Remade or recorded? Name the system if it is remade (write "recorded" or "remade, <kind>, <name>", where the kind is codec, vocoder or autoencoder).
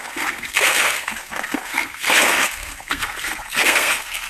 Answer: remade, codec, SNAC